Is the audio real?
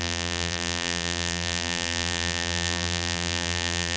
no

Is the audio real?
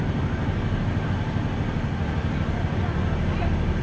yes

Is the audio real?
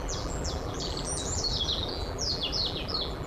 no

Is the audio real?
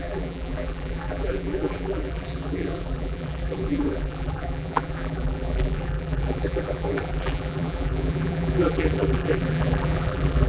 no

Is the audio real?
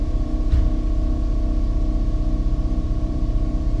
no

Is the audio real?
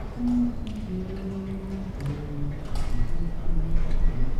yes